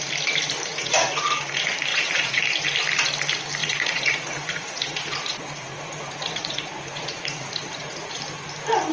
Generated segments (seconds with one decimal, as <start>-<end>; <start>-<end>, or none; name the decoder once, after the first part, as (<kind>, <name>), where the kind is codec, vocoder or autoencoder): 0.7-1.5 (vocoder, Vocos); 1.9-2.4; 3.6-8.2